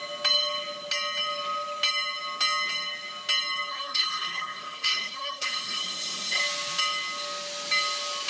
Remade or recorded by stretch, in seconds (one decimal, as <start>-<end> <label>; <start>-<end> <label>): 0.0-3.7 recorded; 3.7-6.4 remade; 6.4-8.3 recorded